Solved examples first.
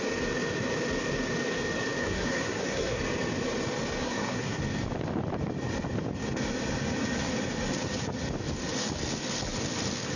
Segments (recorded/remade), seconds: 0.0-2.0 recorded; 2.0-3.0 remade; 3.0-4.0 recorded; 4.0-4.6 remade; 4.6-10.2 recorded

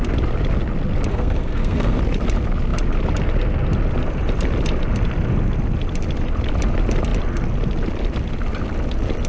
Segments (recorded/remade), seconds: 0.0-1.1 recorded; 1.1-2.0 remade; 2.0-9.3 recorded

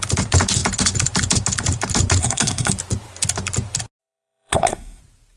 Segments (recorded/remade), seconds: 0.0-2.2 recorded; 2.2-2.7 remade; 2.7-4.0 recorded; 4.0-5.0 remade; 5.0-5.4 recorded

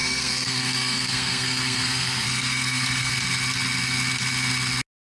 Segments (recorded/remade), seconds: 0.0-3.1 remade; 3.1-5.1 recorded

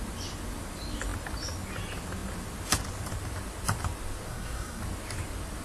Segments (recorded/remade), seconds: 0.0-4.3 recorded; 4.3-4.8 remade; 4.8-5.6 recorded